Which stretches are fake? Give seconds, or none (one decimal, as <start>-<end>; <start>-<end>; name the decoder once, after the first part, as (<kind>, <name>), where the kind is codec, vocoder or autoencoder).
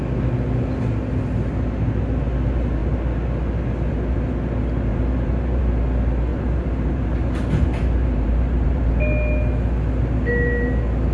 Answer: 4.9-5.6 (vocoder, BigVGAN v2); 6.3-8.9